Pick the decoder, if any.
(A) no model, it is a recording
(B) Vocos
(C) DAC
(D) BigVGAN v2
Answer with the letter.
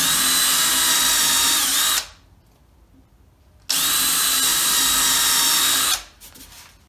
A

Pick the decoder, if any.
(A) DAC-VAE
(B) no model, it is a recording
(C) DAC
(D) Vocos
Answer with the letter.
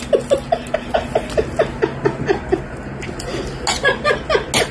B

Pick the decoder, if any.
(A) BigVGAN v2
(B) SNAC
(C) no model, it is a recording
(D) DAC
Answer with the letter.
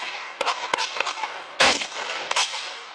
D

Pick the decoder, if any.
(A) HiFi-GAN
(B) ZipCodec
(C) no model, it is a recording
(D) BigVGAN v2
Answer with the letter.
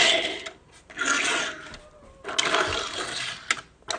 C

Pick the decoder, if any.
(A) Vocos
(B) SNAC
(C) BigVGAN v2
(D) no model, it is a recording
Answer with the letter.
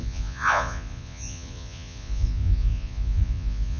A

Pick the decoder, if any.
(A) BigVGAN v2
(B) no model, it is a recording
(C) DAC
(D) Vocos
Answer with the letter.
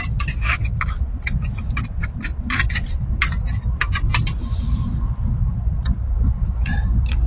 A